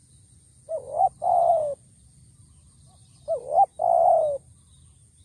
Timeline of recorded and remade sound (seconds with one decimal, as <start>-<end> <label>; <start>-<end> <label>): 0.0-1.5 remade; 1.5-5.2 recorded